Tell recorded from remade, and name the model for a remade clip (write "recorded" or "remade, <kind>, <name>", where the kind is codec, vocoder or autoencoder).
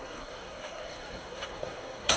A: remade, codec, SNAC